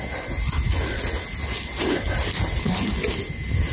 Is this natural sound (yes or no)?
yes